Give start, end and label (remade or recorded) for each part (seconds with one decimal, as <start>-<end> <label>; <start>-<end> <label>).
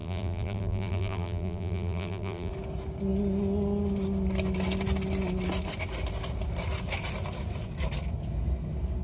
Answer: 0.0-2.5 remade; 2.5-9.0 recorded